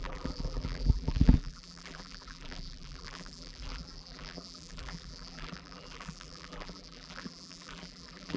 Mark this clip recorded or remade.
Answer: remade